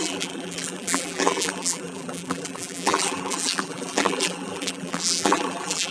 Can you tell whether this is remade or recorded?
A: remade